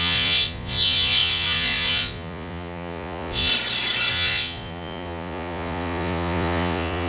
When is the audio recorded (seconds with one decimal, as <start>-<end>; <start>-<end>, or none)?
3.5-4.1